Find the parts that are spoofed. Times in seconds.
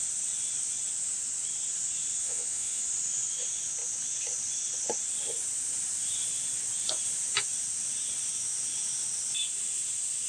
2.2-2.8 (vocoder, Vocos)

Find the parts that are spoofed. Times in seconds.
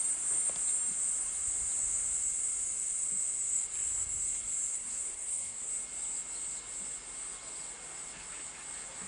4.7-5.7 (codec, SNAC)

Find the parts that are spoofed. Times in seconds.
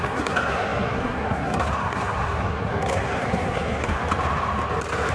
0.0-4.0 (codec, SNAC)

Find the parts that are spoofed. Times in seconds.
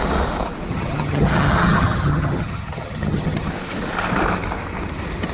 0.7-3.5 (vocoder, HiFi-GAN)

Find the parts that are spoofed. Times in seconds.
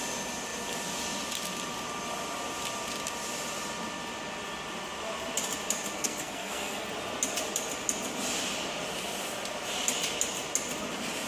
5.9-6.9 (codec, SNAC)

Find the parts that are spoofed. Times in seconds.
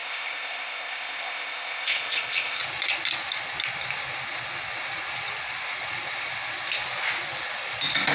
0.0-2.6 (codec, ZipCodec)